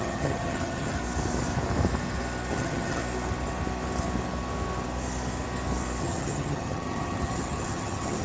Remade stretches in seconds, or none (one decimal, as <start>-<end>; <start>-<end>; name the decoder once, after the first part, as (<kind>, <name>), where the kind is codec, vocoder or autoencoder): 0.0-1.0 (vocoder, HiFi-GAN); 2.5-3.0; 6.0-8.2